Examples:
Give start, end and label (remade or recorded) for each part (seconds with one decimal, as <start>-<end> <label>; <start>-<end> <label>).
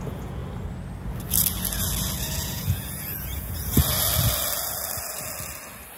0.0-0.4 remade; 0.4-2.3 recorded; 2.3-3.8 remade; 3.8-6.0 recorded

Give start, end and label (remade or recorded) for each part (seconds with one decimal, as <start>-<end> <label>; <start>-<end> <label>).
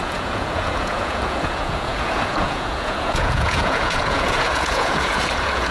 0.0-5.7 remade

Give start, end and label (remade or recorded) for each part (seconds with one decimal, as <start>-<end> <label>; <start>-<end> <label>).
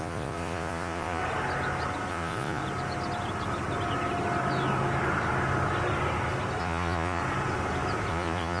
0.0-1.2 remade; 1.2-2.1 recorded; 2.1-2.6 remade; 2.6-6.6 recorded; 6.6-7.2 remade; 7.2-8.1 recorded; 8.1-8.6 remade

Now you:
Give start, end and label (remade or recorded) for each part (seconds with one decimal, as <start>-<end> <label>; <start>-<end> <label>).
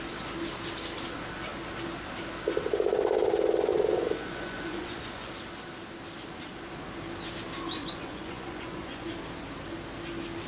0.0-3.7 recorded; 3.7-5.3 remade; 5.3-7.8 recorded; 7.8-9.1 remade; 9.1-10.5 recorded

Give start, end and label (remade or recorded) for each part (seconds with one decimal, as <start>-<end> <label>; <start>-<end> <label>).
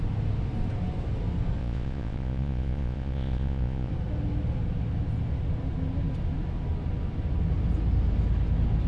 0.0-1.6 recorded; 1.6-3.9 remade; 3.9-8.9 recorded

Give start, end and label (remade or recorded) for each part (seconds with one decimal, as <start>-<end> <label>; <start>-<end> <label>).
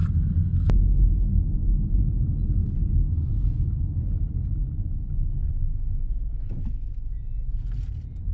0.0-8.3 recorded